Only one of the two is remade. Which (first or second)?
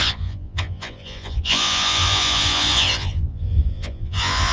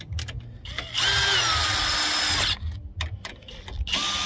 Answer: first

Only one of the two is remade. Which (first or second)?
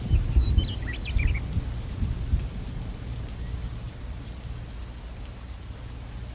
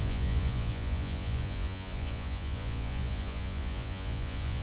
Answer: second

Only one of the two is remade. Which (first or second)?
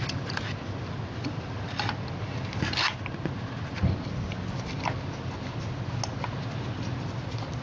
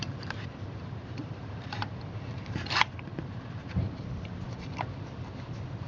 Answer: second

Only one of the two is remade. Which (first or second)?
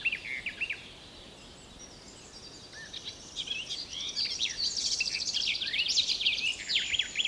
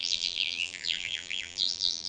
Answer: second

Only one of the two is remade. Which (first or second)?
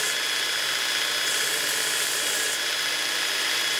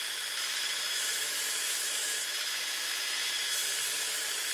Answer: second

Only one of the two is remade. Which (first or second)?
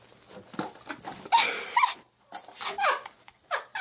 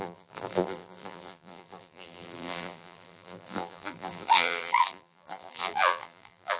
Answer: second